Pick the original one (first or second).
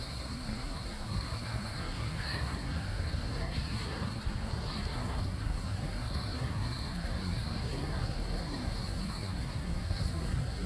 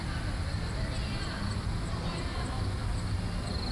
second